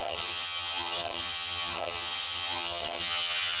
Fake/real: fake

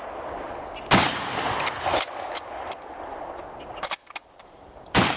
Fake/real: real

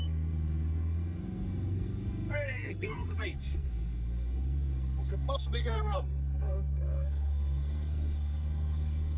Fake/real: fake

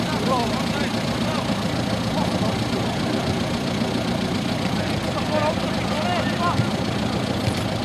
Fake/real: fake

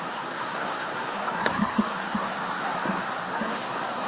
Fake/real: fake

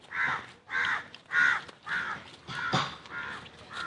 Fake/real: real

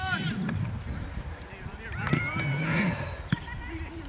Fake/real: real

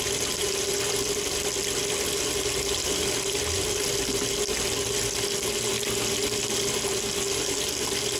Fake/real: real